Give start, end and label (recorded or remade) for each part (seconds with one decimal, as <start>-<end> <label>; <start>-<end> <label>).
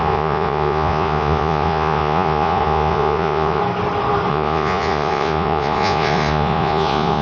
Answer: 0.0-3.6 remade; 3.6-4.3 recorded; 4.3-7.2 remade